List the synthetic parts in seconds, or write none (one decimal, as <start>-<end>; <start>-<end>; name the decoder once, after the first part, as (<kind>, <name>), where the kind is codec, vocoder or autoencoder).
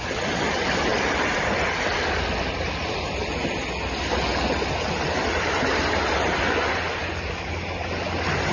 0.0-3.2 (vocoder, BigVGAN v2)